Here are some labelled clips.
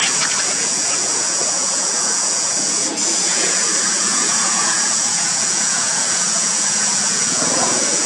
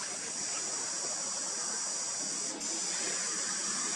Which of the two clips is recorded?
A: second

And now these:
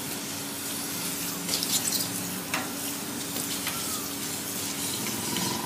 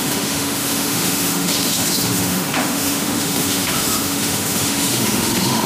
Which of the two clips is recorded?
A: first